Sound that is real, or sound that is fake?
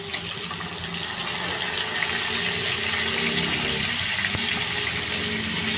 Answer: real